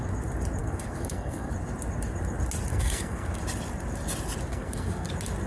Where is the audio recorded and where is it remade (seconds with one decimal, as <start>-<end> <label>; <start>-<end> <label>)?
0.0-0.6 recorded; 0.6-1.5 remade; 1.5-2.7 recorded; 2.7-3.4 remade; 3.4-4.5 recorded; 4.5-5.1 remade; 5.1-5.5 recorded